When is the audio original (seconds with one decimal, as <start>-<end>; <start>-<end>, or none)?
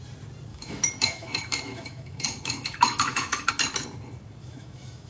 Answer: 0.0-0.5; 3.5-4.4